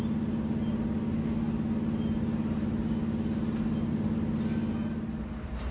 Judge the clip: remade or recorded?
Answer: recorded